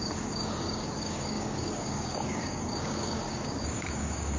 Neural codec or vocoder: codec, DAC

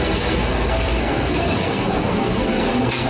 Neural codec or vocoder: codec, SNAC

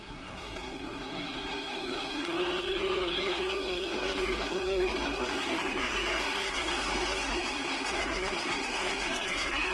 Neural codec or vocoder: codec, SNAC